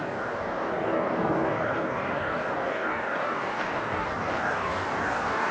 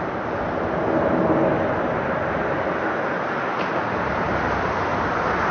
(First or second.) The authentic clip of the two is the second